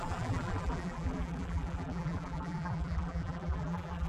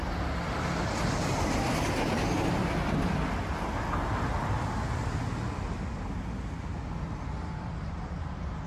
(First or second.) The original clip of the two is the second